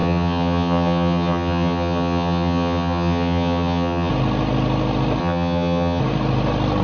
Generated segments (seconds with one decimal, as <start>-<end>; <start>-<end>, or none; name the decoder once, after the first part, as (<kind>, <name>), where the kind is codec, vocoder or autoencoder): 0.0-4.1 (vocoder, HiFi-GAN); 5.2-6.0